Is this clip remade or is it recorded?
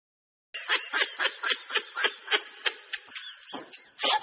recorded